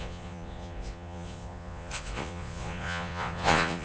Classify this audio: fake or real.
fake